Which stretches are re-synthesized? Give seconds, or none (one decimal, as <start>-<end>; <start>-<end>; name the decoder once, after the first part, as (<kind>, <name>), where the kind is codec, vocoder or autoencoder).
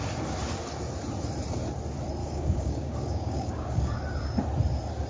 2.2-3.9 (codec, DAC)